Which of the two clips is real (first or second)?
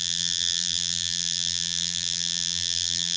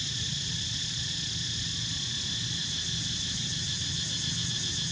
second